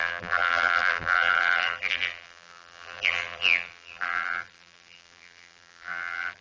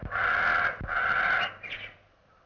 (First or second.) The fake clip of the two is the first